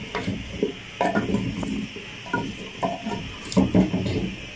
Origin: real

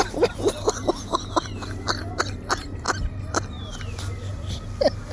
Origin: real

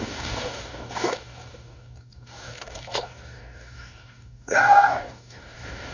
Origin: fake